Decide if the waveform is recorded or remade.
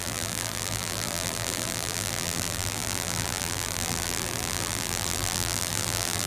remade